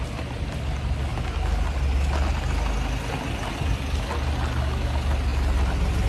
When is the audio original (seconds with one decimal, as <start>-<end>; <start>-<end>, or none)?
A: 0.0-6.1